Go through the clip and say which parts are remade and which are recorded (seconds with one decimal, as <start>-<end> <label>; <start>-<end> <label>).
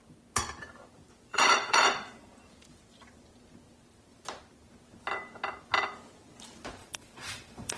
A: 0.0-1.3 recorded; 1.3-2.3 remade; 2.3-6.8 recorded; 6.8-7.8 remade